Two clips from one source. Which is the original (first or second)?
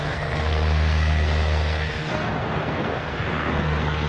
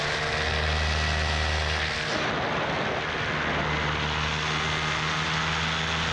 second